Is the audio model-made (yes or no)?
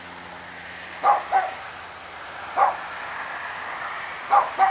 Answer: no